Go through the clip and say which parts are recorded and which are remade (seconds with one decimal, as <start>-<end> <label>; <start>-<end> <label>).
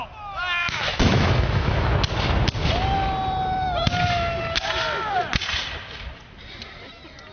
0.0-0.6 recorded; 0.6-1.9 remade; 1.9-7.3 recorded